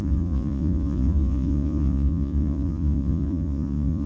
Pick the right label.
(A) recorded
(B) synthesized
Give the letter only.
B